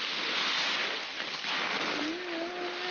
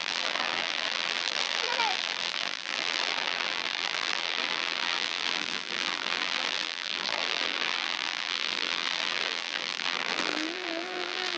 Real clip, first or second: first